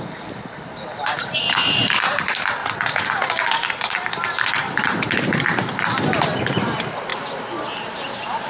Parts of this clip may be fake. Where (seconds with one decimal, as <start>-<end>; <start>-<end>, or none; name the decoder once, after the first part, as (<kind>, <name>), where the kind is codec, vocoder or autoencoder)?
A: 0.0-2.6 (vocoder, BigVGAN v2); 3.5-7.1; 7.7-8.5